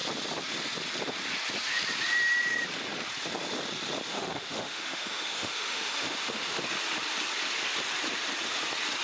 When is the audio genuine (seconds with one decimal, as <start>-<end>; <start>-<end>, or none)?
0.0-4.1; 6.6-9.0